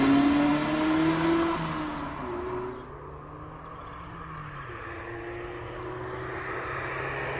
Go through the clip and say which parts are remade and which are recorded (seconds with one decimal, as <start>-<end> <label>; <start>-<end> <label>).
0.0-7.4 recorded